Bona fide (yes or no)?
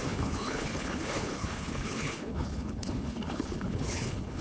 no